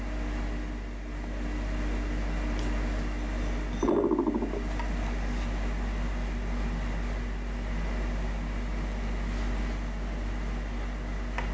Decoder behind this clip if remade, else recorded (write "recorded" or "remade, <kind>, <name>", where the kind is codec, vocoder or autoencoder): recorded